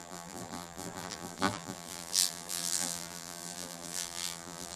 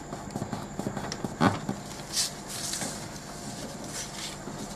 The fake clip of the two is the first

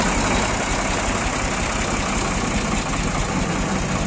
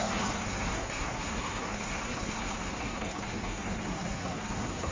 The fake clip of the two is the second